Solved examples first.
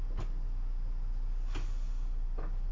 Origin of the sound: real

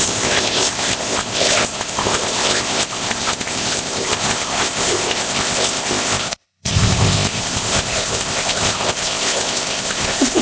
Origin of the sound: fake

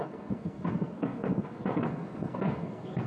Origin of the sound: fake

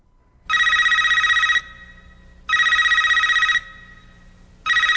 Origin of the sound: real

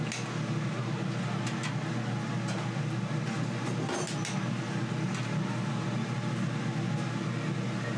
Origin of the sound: real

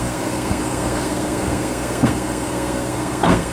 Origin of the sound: fake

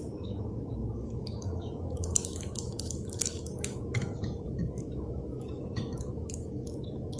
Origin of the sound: fake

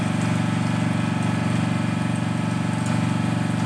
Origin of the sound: real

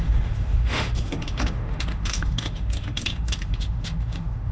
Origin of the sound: fake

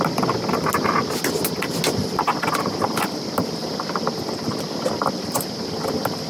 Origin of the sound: real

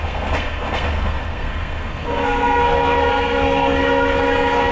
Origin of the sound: fake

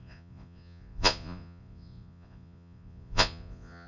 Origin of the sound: fake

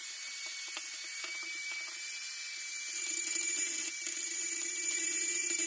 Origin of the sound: fake